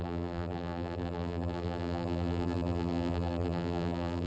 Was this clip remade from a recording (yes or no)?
yes